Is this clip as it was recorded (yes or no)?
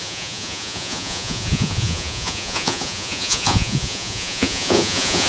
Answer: no